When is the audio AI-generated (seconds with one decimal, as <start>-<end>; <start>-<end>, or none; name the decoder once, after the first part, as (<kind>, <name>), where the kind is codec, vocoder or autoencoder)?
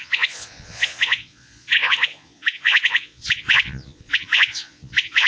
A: 0.0-5.3 (vocoder, Vocos)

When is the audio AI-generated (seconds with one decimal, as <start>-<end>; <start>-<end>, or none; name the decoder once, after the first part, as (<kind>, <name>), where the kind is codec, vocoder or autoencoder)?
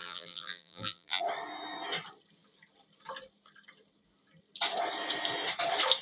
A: 0.0-1.2 (vocoder, BigVGAN v2)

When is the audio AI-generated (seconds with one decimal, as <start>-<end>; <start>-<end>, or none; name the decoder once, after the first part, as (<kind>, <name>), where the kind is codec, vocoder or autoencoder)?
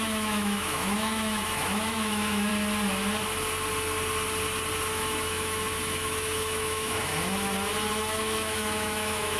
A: 0.0-2.5 (autoencoder, DAC-VAE); 4.9-7.1; 7.9-9.4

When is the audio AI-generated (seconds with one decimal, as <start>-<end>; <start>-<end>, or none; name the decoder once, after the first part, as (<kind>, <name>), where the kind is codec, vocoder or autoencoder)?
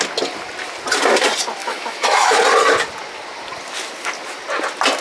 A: 1.6-2.4 (autoencoder, DAC-VAE)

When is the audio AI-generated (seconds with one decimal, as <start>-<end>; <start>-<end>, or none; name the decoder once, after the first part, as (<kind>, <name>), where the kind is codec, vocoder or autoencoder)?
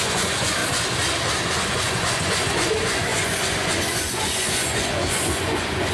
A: 0.0-0.6 (vocoder, Vocos); 1.5-5.9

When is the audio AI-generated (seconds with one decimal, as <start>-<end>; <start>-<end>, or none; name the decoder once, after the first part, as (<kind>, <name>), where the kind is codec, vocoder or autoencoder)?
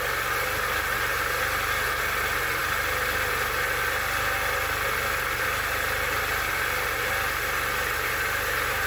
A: none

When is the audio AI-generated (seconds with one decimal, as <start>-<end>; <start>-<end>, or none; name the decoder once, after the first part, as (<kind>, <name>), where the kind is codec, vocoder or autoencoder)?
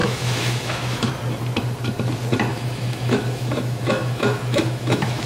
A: 0.0-1.1 (autoencoder, DAC-VAE); 2.5-5.3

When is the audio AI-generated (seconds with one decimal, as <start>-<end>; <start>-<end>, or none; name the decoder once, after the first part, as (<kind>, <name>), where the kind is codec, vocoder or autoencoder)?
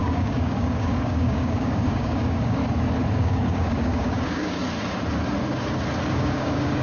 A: 0.0-2.6 (codec, DAC); 3.1-4.6; 6.1-6.8